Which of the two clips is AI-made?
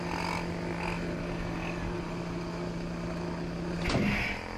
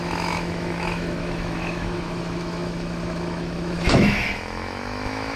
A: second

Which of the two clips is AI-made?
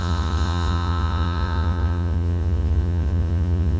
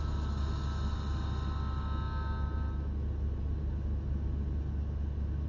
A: first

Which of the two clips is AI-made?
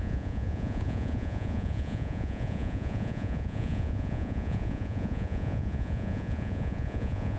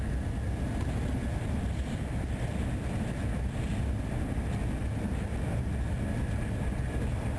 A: first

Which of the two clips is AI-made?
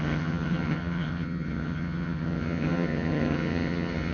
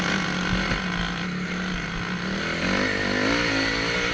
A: first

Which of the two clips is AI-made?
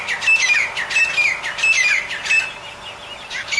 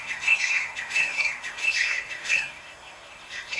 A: second